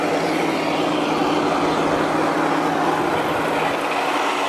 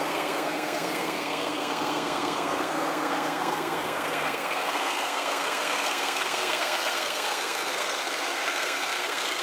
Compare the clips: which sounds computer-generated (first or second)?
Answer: second